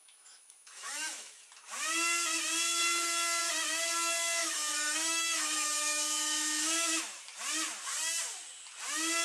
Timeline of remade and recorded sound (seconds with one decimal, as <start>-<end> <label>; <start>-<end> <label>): 0.0-1.4 remade; 1.4-4.4 recorded; 4.4-7.0 remade; 7.0-9.2 recorded